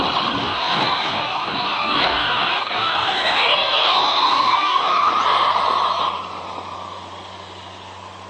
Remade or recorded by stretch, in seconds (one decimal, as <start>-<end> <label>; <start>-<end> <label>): 0.0-0.4 recorded; 0.4-5.1 remade; 5.1-8.3 recorded